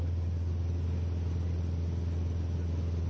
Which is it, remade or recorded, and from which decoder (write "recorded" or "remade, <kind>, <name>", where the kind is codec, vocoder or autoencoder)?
recorded